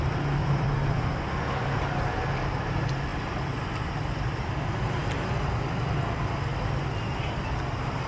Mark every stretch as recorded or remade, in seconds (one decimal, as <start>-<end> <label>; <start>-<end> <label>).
0.0-0.4 recorded; 0.4-1.1 remade; 1.1-8.1 recorded